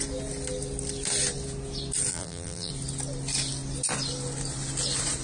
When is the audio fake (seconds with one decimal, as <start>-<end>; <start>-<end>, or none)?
2.1-2.7